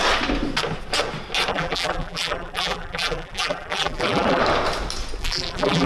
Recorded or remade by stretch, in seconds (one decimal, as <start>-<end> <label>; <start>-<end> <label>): 0.0-1.5 recorded; 1.5-4.4 remade; 4.4-5.2 recorded; 5.2-5.9 remade